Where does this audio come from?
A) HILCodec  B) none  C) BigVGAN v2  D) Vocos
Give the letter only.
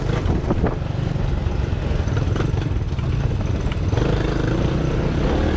B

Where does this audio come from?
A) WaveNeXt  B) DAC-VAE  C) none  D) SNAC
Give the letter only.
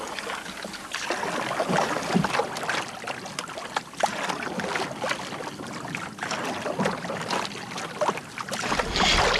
C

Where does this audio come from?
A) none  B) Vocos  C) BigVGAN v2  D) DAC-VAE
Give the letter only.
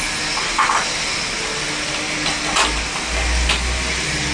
A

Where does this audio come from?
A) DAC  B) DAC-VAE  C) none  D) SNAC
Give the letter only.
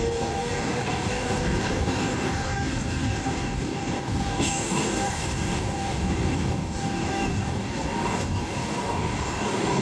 A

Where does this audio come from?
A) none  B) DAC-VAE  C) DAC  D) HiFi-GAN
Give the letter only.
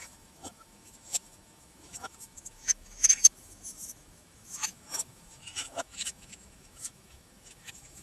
B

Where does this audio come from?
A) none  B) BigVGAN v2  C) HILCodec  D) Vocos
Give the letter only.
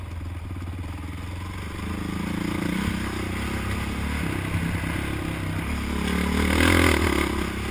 A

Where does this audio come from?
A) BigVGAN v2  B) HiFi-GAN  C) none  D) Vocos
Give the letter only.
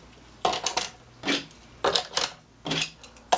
C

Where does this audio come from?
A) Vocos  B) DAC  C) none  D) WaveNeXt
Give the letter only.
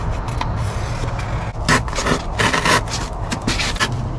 C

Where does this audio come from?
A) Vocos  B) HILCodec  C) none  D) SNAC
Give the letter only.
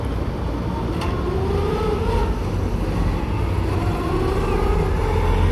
C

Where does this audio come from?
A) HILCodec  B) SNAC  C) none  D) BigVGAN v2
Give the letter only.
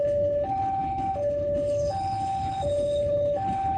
A